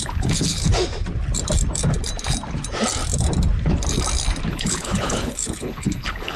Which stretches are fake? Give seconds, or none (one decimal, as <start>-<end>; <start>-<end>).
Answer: 0.0-0.7; 4.5-6.4